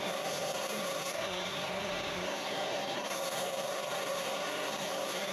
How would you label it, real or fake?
fake